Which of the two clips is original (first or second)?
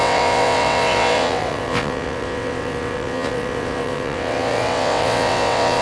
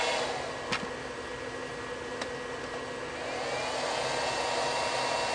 second